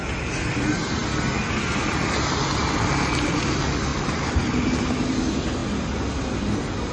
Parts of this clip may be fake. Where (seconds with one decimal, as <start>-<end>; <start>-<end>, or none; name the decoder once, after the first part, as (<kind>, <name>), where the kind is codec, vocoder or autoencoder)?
3.9-4.7 (vocoder, BigVGAN v2)